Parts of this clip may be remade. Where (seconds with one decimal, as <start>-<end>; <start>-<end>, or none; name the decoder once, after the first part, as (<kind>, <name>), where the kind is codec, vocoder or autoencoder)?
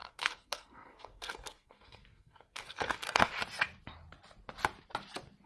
0.0-3.3 (codec, SNAC)